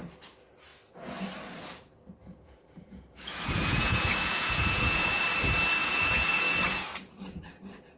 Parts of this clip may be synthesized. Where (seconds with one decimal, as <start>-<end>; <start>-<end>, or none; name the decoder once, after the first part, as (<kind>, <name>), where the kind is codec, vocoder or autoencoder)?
2.2-5.2 (vocoder, Vocos); 5.8-7.4